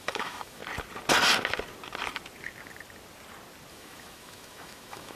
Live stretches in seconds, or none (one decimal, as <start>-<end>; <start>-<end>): 0.6-3.7